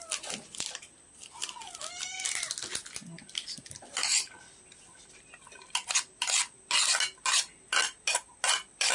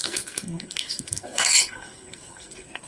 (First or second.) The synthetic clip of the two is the second